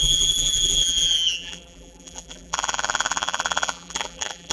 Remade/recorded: remade